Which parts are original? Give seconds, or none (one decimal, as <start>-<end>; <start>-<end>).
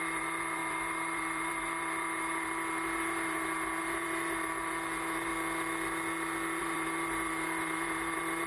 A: 5.3-6.6